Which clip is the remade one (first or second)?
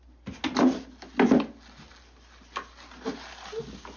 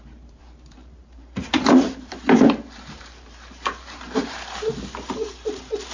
second